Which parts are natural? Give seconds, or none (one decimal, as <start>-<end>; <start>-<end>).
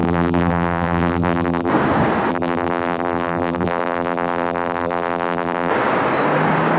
1.7-2.3; 5.7-6.8